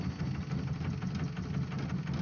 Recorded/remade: recorded